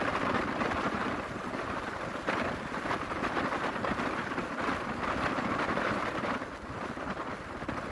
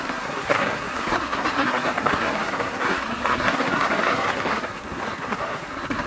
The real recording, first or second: first